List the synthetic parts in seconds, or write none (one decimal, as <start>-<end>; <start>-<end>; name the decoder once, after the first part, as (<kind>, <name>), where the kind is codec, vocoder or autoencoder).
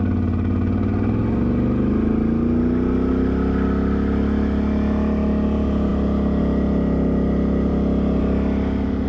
none